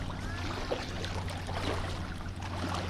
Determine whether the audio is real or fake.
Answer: real